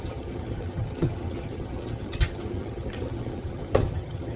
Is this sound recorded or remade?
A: remade